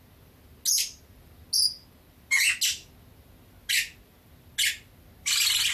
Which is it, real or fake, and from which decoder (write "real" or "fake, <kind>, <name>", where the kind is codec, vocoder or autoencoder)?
real